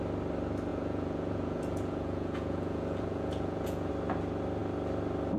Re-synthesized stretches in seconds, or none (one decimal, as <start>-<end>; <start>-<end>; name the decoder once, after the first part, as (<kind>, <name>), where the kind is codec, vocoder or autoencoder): 0.7-3.9 (vocoder, Vocos)